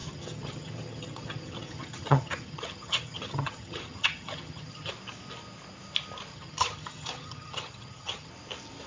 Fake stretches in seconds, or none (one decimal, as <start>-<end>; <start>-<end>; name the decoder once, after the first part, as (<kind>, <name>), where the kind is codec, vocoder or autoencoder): 0.0-4.9 (vocoder, HiFi-GAN); 6.3-8.3